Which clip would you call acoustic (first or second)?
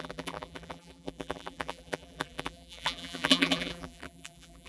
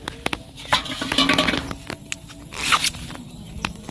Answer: second